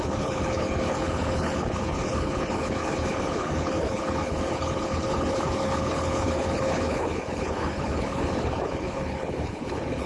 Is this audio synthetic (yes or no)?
yes